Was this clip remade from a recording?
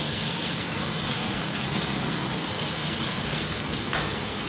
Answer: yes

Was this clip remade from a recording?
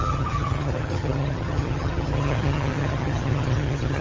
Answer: yes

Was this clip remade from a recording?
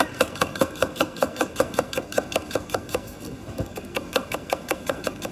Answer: yes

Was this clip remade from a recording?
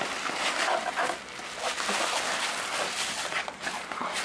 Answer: no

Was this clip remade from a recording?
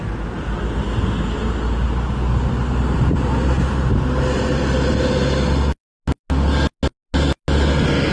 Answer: no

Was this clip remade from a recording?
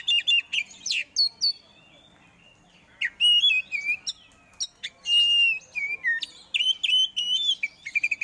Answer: no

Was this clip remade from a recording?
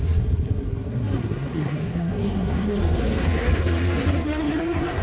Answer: yes